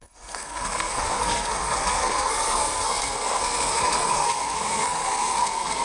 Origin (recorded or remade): remade